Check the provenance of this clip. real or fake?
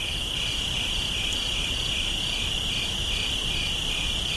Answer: real